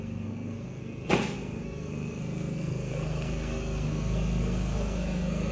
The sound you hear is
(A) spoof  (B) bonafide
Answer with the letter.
A